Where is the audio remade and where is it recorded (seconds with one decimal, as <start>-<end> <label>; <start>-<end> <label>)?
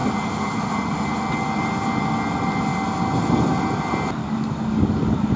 0.0-4.2 recorded; 4.2-5.4 remade